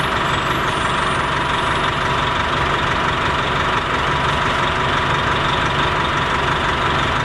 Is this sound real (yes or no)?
yes